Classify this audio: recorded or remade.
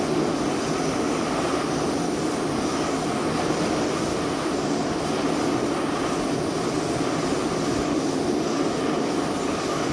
recorded